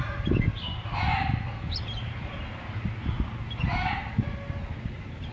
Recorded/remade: recorded